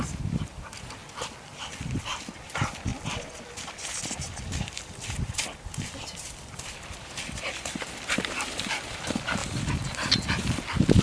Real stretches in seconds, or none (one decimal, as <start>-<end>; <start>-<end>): 1.0-1.9; 2.9-4.6